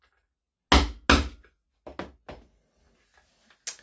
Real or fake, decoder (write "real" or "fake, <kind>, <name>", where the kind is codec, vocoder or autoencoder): real